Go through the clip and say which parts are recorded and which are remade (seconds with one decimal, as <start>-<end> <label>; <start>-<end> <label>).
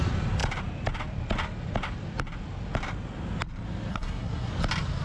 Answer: 0.0-3.9 recorded; 3.9-4.5 remade; 4.5-5.0 recorded